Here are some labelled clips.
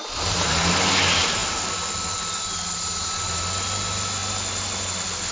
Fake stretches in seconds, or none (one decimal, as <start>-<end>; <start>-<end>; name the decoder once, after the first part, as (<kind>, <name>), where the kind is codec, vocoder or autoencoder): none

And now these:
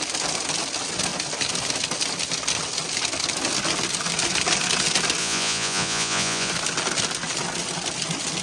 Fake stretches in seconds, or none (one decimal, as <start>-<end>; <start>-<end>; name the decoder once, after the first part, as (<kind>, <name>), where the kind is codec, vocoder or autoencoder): 5.2-6.5 (vocoder, Vocos)

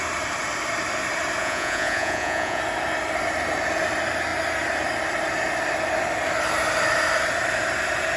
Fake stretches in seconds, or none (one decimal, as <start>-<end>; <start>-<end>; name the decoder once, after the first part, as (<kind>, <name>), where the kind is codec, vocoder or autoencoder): 1.4-2.6 (vocoder, Vocos)

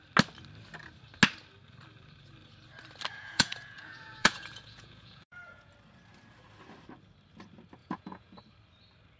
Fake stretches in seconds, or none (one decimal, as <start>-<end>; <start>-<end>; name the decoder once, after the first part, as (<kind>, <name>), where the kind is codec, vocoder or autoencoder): 3.1-5.7 (vocoder, Vocos); 7.8-8.4